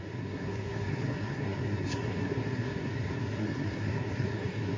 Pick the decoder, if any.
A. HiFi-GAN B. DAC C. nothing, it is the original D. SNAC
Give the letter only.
D